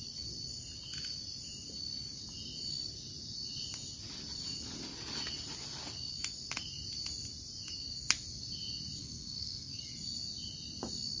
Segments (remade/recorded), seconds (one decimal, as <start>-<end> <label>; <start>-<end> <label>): 0.0-9.0 recorded; 9.0-9.8 remade; 9.8-11.2 recorded